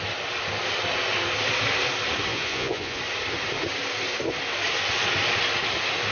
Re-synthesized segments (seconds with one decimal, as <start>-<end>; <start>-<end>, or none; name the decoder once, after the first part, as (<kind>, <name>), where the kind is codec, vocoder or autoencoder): 2.3-3.0 (vocoder, Vocos)